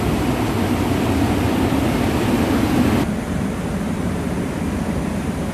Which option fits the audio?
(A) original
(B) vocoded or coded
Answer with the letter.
A